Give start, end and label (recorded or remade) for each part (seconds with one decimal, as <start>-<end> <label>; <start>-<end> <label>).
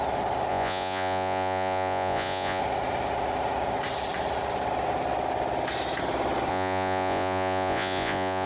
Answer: 0.0-0.5 recorded; 0.5-2.6 remade; 2.6-6.5 recorded; 6.5-8.5 remade